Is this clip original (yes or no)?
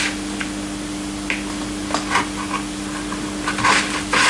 yes